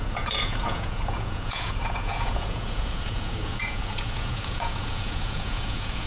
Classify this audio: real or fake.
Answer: fake